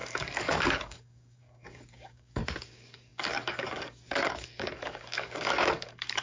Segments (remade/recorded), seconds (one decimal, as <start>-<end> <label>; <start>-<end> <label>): 0.0-6.2 remade